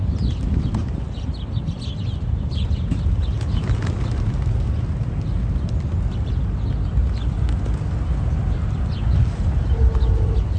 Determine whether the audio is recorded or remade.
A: recorded